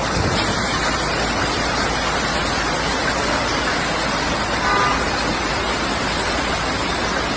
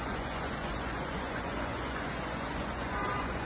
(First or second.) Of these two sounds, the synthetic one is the second